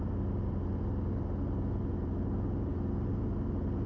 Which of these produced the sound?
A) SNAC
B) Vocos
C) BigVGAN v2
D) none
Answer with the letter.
D